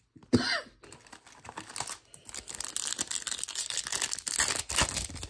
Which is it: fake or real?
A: real